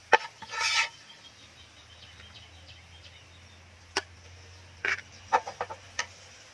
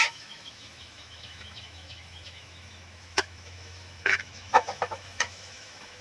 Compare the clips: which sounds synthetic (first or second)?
second